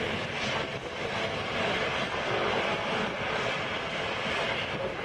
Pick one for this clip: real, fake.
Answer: real